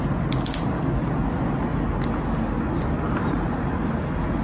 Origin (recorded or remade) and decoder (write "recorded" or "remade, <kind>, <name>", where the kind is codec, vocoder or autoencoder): recorded